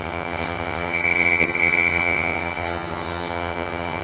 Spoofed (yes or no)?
yes